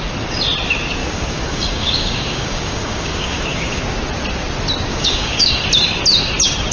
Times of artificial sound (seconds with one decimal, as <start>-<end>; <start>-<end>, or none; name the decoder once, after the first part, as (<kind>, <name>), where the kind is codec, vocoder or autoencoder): 1.0-3.8 (codec, DAC); 4.9-5.5